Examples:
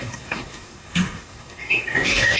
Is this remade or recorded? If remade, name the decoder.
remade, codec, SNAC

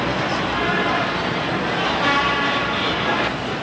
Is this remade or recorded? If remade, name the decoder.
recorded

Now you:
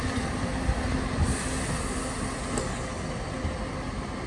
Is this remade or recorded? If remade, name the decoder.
recorded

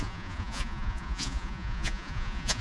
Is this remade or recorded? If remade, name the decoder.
remade, vocoder, Vocos